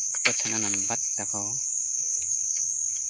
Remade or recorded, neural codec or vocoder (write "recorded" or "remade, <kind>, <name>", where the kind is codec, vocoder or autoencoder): remade, autoencoder, DAC-VAE